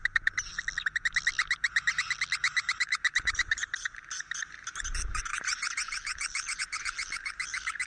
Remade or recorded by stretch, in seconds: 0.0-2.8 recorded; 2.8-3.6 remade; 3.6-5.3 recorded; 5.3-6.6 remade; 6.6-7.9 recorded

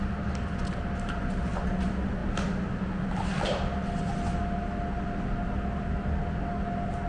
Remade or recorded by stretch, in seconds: 0.0-7.1 recorded

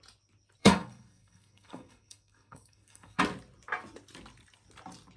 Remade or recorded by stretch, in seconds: 0.0-0.6 recorded; 0.6-3.2 remade; 3.2-5.2 recorded

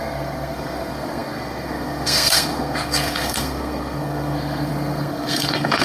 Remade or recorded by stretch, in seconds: 0.0-5.8 remade

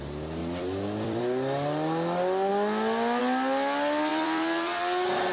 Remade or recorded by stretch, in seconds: 0.0-0.4 recorded; 0.4-1.2 remade; 1.2-4.1 recorded; 4.1-4.8 remade; 4.8-5.3 recorded

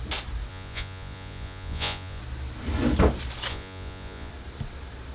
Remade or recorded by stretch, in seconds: 0.0-0.5 recorded; 0.5-2.2 remade; 2.2-3.5 recorded; 3.5-4.3 remade; 4.3-5.1 recorded